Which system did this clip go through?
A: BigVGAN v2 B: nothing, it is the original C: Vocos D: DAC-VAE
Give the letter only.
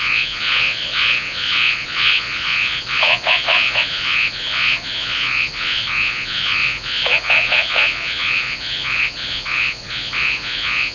C